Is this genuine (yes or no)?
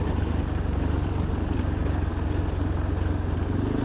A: yes